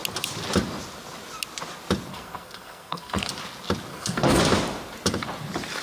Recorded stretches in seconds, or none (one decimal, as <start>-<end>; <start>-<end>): 0.0-2.1; 3.3-3.9; 4.4-5.8